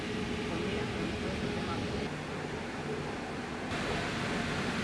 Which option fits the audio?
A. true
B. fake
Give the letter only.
A